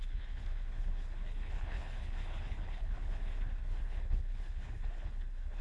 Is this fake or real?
fake